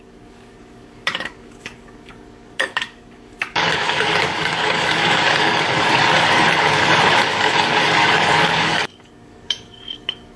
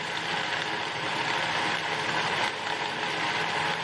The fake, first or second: first